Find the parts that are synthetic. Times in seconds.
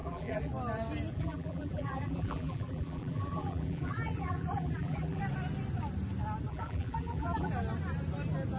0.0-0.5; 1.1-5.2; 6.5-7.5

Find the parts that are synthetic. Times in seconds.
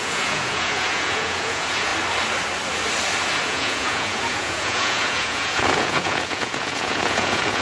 0.0-1.9; 3.4-7.6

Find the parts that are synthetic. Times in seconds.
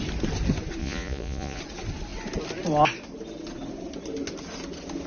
0.8-1.6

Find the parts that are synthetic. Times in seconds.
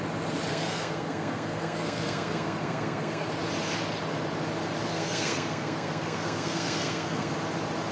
0.5-3.3; 4.9-7.3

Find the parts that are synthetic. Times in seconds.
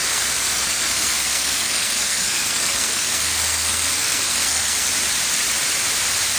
0.0-4.9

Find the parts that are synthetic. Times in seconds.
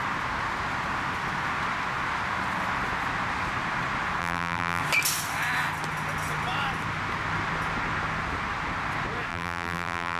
4.2-4.8; 9.3-10.2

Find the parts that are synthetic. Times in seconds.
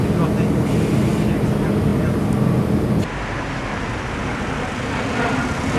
none